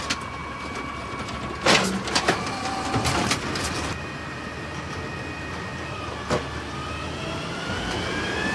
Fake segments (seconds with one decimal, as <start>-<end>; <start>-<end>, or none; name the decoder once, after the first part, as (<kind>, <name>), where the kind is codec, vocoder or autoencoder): none